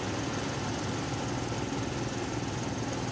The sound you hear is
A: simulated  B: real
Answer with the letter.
B